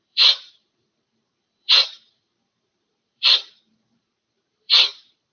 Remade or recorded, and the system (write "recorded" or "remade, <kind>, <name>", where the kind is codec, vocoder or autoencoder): remade, vocoder, BigVGAN v2